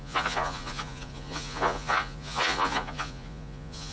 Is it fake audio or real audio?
fake